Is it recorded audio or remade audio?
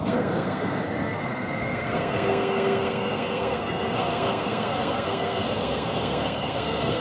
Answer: remade